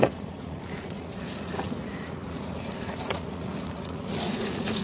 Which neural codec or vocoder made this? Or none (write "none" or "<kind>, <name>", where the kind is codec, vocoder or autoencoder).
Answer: vocoder, Vocos